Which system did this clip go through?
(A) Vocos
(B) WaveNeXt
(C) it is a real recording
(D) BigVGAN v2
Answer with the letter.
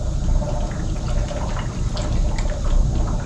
C